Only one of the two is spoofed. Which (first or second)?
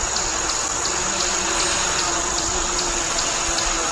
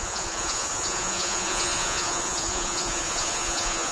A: second